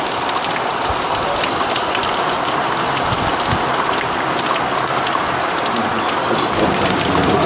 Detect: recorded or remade recorded